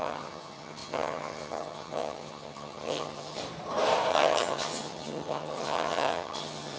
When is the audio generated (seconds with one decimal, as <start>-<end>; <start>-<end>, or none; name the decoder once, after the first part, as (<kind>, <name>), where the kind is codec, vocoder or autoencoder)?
0.0-3.4 (vocoder, HiFi-GAN); 4.1-6.8